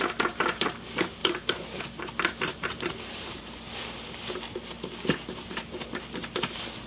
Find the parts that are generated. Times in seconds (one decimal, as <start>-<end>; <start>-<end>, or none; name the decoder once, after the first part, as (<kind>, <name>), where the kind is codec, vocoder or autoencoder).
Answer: 1.2-1.8 (vocoder, BigVGAN v2); 2.5-3.4